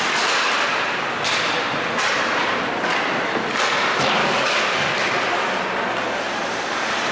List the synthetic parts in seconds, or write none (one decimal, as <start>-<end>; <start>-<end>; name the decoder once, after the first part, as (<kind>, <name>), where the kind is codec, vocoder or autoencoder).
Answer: 4.2-4.9 (codec, DAC)